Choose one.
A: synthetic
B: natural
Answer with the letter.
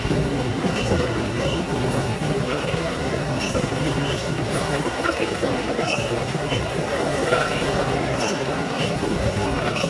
A